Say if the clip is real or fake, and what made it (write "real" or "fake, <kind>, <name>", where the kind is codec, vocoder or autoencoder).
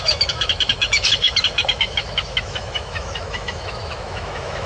fake, autoencoder, DAC-VAE